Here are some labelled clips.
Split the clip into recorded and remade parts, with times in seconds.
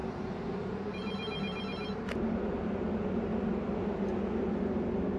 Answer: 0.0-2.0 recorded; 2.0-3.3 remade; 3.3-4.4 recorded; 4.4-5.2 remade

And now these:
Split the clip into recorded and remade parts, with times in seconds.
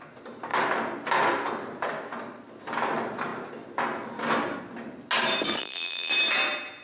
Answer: 0.0-5.6 recorded; 5.6-6.1 remade; 6.1-6.8 recorded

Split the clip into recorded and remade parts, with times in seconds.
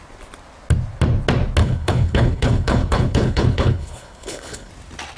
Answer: 0.0-1.6 recorded; 1.6-4.7 remade; 4.7-5.2 recorded